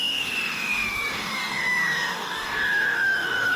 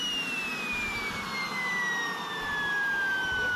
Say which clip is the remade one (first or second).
first